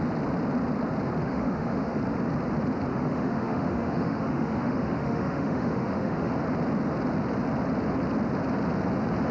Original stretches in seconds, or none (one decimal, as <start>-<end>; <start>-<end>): 0.0-1.2; 2.0-2.9; 6.3-9.3